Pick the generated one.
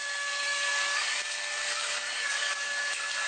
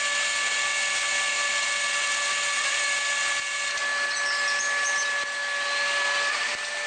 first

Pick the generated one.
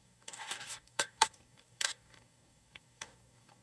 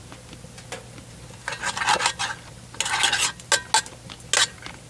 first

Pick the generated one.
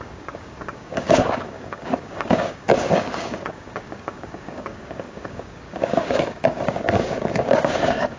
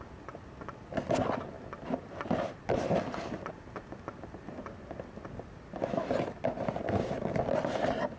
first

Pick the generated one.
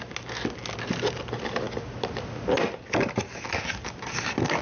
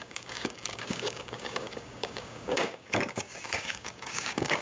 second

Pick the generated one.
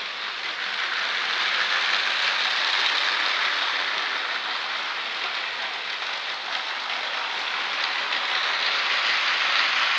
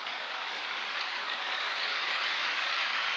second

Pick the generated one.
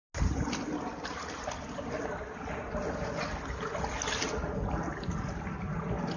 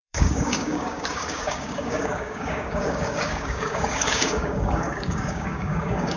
second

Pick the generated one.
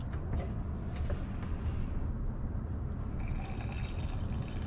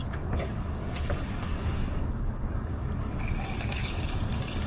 second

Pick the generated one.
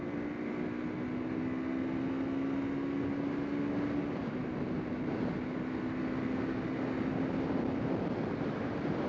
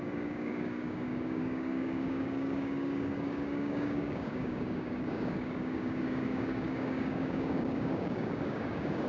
second